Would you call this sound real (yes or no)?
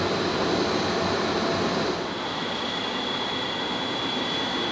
yes